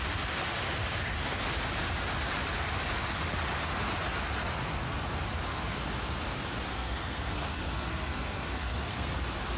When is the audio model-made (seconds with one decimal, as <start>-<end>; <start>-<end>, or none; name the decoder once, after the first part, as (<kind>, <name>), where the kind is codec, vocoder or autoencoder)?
6.7-9.1 (codec, SNAC)